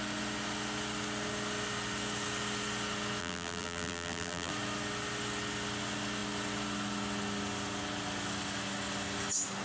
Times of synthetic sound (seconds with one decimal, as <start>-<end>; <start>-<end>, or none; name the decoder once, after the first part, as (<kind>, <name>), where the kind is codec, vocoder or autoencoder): 3.2-4.5 (vocoder, BigVGAN v2)